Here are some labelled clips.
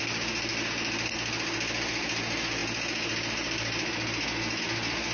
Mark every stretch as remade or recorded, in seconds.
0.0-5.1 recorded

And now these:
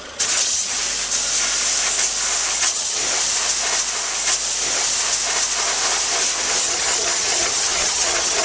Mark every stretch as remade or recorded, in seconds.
0.0-0.8 remade; 0.8-2.6 recorded; 2.6-3.0 remade; 3.0-6.6 recorded; 6.6-8.4 remade

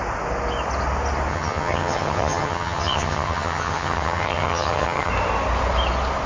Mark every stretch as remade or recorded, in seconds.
0.0-1.3 recorded; 1.3-5.1 remade; 5.1-6.3 recorded

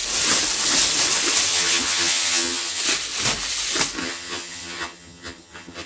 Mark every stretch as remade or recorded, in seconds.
0.0-1.5 recorded; 1.5-2.8 remade; 2.8-4.0 recorded; 4.0-5.9 remade

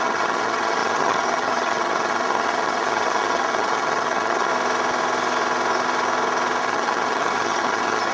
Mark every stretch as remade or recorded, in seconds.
0.0-4.5 remade; 4.5-6.6 recorded; 6.6-8.1 remade

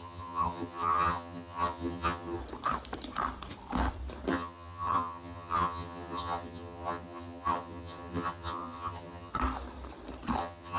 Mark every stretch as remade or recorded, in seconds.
0.0-2.4 remade; 2.4-4.3 recorded; 4.3-9.3 remade; 9.3-10.4 recorded; 10.4-10.8 remade

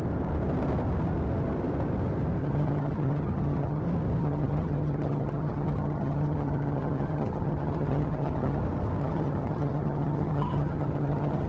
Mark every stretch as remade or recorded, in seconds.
0.0-2.4 recorded; 2.4-3.8 remade; 3.8-4.2 recorded; 4.2-8.6 remade; 8.6-9.0 recorded; 9.0-11.5 remade

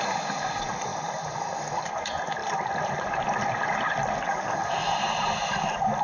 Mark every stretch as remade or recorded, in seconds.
0.0-6.0 recorded